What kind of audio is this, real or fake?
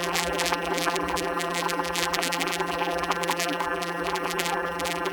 fake